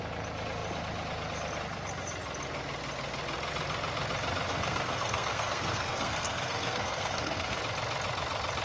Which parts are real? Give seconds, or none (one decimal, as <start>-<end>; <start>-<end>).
0.0-4.5; 7.6-8.6